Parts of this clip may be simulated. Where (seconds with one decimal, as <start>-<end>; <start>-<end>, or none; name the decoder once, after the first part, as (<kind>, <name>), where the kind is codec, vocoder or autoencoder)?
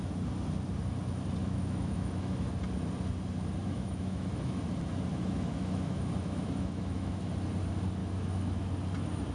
1.4-2.5 (autoencoder, DAC-VAE); 3.6-4.6; 5.1-7.3; 8.0-8.6